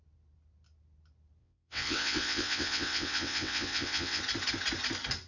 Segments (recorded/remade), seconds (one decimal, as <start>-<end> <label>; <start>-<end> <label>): 0.0-1.4 recorded; 1.4-4.2 remade; 4.2-5.3 recorded